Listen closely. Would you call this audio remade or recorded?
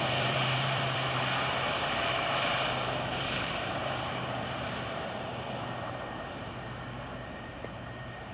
remade